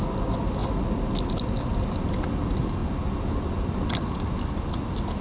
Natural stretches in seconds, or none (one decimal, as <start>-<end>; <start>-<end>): 0.0-5.2